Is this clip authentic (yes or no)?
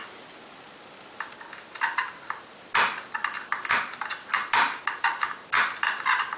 yes